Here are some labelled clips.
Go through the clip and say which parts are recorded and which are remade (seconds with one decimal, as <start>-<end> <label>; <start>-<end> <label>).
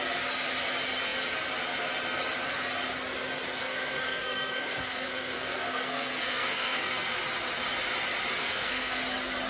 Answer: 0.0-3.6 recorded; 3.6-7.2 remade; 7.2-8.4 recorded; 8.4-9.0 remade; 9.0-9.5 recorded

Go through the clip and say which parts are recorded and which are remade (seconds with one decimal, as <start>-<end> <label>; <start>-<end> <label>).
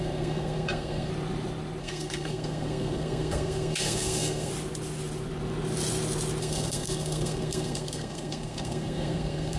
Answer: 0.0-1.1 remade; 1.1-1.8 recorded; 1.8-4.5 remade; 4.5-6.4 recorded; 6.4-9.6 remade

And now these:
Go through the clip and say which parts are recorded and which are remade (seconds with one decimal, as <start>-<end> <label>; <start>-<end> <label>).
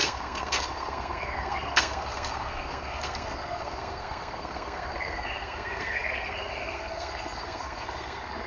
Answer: 0.0-8.5 remade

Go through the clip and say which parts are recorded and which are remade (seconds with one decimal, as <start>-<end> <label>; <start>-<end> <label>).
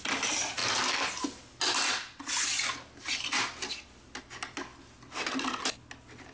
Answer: 0.0-6.3 recorded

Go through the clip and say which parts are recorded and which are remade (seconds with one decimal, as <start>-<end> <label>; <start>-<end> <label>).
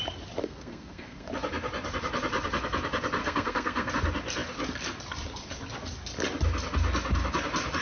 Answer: 0.0-0.4 recorded; 0.4-1.3 remade; 1.3-3.2 recorded; 3.2-3.9 remade; 3.9-7.8 recorded